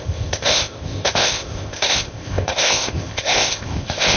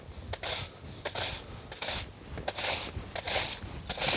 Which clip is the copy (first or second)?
first